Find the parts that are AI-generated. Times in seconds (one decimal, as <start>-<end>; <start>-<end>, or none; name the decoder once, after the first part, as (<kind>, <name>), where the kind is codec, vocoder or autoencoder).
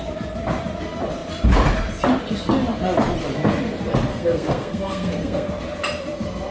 4.1-5.5 (codec, SNAC)